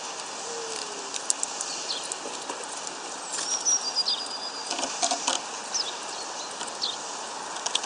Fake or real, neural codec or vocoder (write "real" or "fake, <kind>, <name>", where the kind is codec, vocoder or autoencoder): real